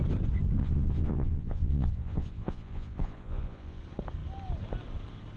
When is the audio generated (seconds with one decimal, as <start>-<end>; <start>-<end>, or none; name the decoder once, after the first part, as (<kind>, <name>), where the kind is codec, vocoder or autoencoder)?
0.6-3.8 (vocoder, Vocos)